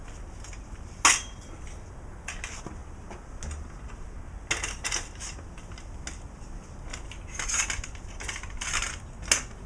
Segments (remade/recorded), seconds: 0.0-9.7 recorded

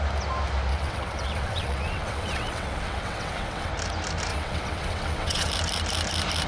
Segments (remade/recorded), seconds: 0.0-0.7 recorded; 0.7-3.7 remade; 3.7-4.3 recorded; 4.3-5.5 remade; 5.5-6.5 recorded

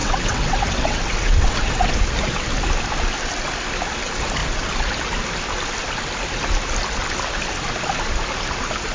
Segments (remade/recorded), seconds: 0.0-2.0 remade; 2.0-8.9 recorded

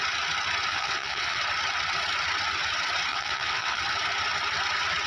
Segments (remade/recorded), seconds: 0.0-0.7 recorded; 0.7-1.4 remade; 1.4-3.1 recorded; 3.1-3.8 remade; 3.8-5.1 recorded